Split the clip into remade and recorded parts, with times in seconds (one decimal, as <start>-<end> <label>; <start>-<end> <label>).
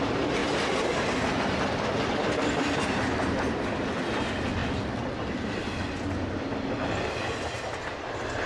0.0-8.5 recorded